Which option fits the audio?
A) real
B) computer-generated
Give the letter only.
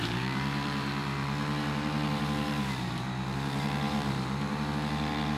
B